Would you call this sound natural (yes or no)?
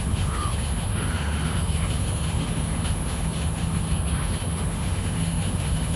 no